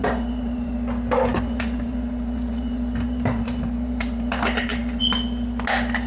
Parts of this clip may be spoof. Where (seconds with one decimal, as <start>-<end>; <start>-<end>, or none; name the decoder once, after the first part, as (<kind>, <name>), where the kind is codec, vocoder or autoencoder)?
0.0-0.7 (vocoder, BigVGAN v2); 1.3-5.0